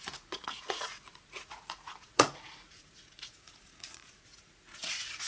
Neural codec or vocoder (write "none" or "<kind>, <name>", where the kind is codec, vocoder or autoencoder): vocoder, Vocos